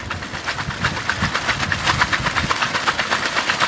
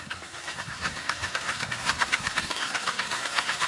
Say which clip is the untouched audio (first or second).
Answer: first